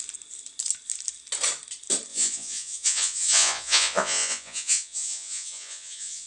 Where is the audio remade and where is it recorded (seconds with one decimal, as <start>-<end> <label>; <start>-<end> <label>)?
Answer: 0.0-2.1 recorded; 2.1-6.3 remade